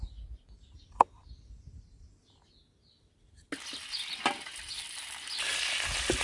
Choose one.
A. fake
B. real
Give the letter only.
B